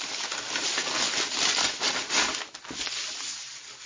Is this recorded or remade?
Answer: recorded